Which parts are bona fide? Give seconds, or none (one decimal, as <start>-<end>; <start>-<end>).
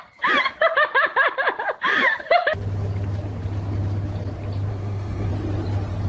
0.0-4.7; 5.3-6.1